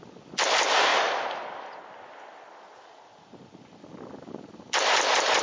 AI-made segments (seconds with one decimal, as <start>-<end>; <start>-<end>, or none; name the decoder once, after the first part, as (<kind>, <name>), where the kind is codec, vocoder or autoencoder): none